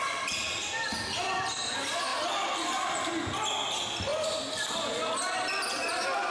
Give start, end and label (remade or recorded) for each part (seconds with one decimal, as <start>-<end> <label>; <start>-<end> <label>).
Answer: 0.0-2.1 recorded; 2.1-3.1 remade; 3.1-6.3 recorded